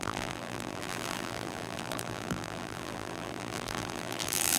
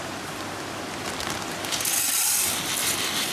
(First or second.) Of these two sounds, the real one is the second